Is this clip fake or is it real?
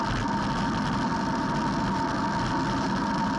real